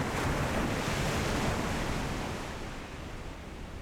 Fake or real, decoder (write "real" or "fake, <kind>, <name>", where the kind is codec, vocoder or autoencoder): real